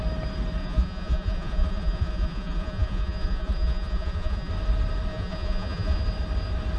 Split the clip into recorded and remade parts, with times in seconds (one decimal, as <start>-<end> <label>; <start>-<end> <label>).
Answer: 0.0-0.6 recorded; 0.6-4.5 remade; 4.5-5.1 recorded; 5.1-6.0 remade; 6.0-6.8 recorded